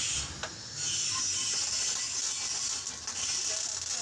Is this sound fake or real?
real